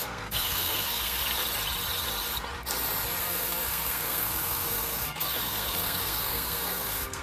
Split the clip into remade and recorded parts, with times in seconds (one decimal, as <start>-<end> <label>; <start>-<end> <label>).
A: 0.0-1.2 remade; 1.2-3.2 recorded; 3.2-7.2 remade